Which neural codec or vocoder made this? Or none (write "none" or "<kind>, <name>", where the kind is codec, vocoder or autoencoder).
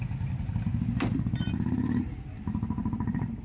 none